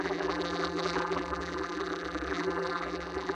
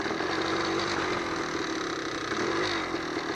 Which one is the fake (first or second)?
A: first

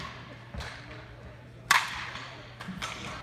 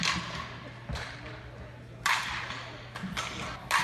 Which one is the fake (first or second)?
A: first